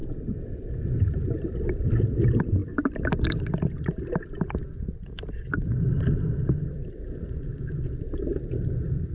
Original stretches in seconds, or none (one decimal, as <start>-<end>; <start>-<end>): 7.5-8.6